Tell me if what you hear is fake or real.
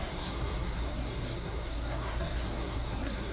fake